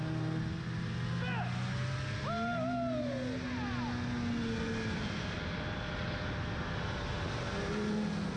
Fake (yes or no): no